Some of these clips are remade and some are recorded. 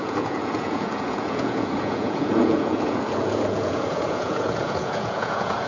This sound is remade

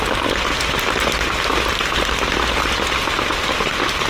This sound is recorded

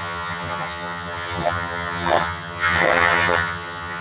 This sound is remade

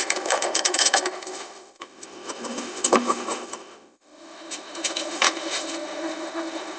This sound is remade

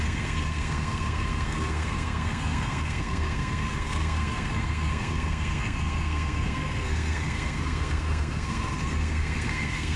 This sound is remade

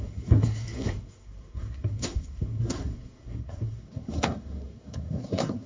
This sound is remade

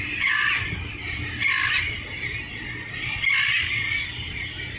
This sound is recorded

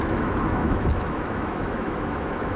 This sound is remade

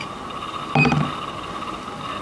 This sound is recorded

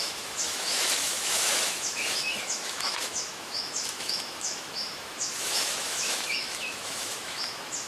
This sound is remade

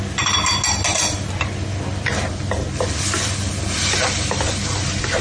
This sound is recorded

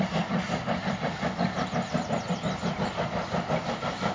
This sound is recorded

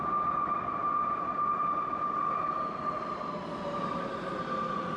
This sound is recorded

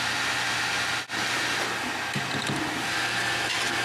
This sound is recorded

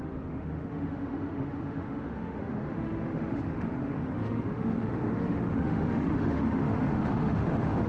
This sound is remade